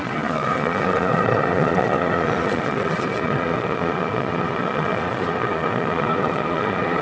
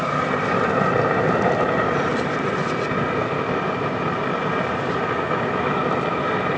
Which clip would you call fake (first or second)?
first